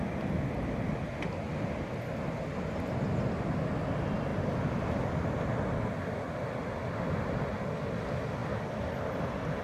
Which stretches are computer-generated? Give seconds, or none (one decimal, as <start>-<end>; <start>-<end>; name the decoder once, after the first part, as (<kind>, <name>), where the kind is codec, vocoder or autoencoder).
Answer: 8.4-9.2 (vocoder, BigVGAN v2)